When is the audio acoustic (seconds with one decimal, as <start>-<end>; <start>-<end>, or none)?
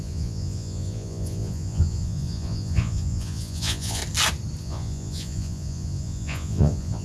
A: 4.0-4.6